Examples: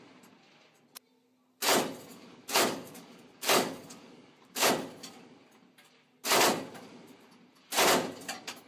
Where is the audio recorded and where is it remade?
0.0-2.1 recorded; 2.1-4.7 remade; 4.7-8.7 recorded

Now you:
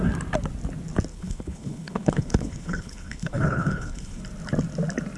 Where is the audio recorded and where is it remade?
0.0-1.1 recorded; 1.1-4.2 remade; 4.2-5.2 recorded

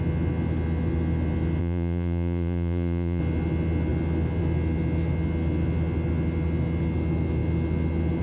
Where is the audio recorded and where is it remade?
0.0-1.6 recorded; 1.6-3.2 remade; 3.2-8.2 recorded

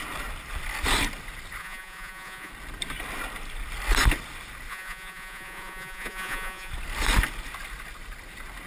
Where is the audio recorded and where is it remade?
0.0-1.6 recorded; 1.6-2.5 remade; 2.5-4.7 recorded; 4.7-6.7 remade; 6.7-8.7 recorded

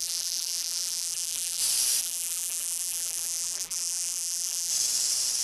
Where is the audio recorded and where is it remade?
0.0-1.6 remade; 1.6-2.0 recorded; 2.0-4.7 remade; 4.7-5.4 recorded

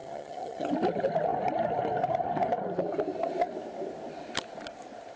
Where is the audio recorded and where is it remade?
0.0-0.7 remade; 0.7-5.2 recorded

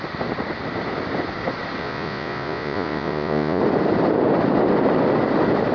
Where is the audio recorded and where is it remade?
0.0-1.8 recorded; 1.8-3.6 remade; 3.6-5.7 recorded

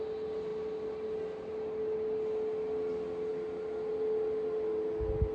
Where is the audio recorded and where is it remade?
0.0-5.3 recorded